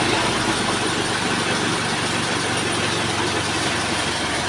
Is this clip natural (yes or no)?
yes